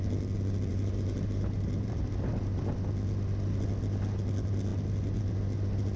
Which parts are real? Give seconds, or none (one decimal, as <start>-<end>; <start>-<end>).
0.0-0.7; 2.6-6.0